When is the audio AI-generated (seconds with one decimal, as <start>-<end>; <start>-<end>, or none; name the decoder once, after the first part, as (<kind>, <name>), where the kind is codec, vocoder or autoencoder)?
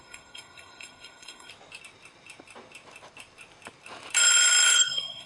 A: 0.0-1.5 (codec, SNAC); 4.7-5.3